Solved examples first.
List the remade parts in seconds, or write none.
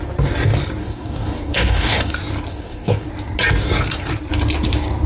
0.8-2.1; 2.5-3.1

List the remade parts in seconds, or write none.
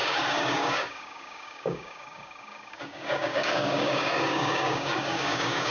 0.0-5.7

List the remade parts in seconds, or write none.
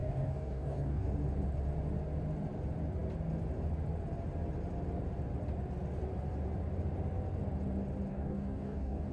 0.0-1.1; 8.1-9.1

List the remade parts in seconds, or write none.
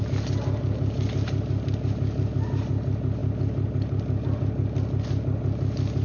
none